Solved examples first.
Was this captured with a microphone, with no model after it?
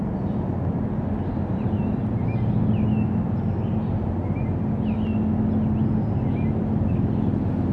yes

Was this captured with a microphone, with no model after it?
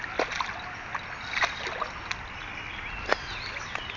yes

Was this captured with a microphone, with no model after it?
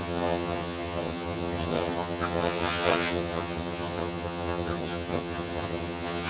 no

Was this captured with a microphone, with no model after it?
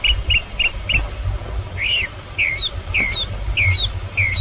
yes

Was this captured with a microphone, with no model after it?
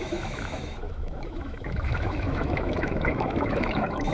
no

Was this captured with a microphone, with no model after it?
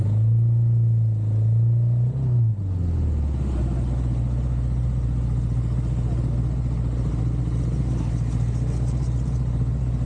yes